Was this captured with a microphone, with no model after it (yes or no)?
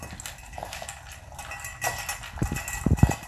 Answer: yes